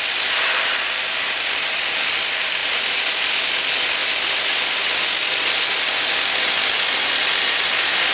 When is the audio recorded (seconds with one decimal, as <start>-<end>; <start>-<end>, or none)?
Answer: 0.0-8.1